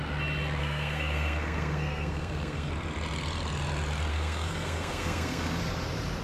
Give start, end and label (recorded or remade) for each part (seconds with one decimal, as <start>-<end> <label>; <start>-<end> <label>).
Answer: 0.0-0.6 recorded; 0.6-2.7 remade; 2.7-4.1 recorded; 4.1-5.6 remade; 5.6-6.2 recorded